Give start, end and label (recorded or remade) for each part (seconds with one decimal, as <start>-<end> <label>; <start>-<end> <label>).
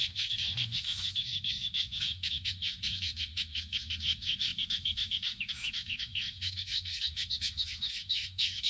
0.0-8.7 remade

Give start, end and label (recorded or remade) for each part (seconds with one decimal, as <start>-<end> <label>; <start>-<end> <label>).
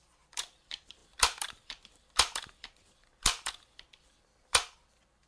0.0-5.3 remade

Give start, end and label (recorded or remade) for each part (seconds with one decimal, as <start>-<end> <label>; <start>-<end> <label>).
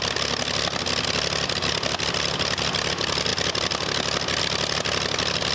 0.0-5.5 recorded